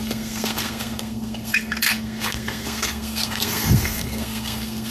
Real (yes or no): no